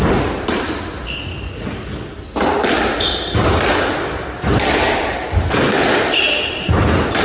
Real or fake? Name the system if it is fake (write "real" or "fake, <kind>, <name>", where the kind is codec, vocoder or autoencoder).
real